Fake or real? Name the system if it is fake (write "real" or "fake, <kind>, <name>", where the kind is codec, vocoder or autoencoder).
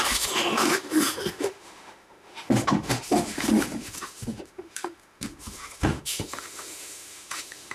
fake, autoencoder, DAC-VAE